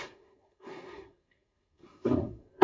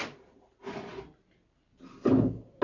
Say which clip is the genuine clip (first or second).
second